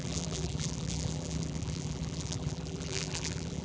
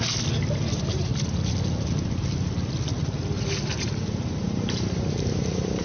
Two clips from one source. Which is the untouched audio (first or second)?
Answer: second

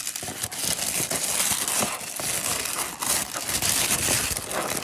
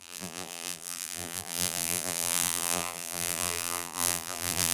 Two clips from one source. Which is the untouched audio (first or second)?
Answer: first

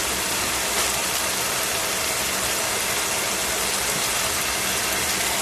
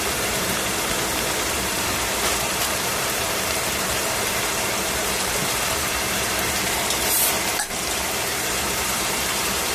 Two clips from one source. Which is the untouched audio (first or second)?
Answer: first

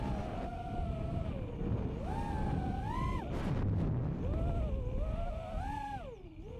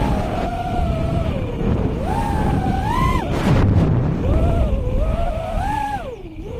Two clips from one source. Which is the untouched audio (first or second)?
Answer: first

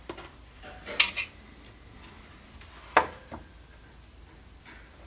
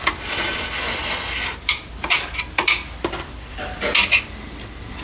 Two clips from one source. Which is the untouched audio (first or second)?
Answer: first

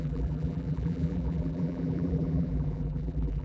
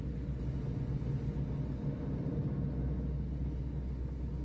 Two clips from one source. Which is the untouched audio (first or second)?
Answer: second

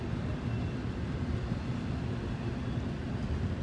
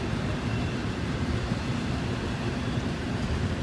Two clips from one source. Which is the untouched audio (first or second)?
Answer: first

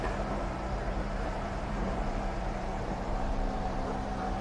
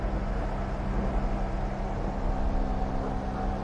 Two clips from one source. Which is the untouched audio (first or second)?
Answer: second